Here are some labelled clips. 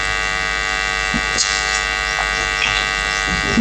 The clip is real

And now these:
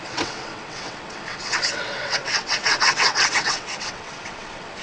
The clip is fake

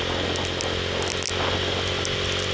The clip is real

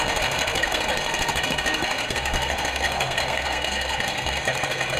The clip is fake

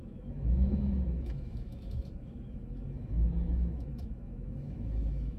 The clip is fake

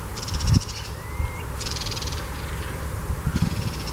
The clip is fake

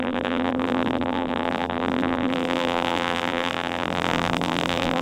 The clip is fake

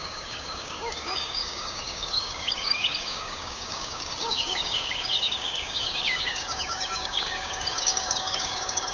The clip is fake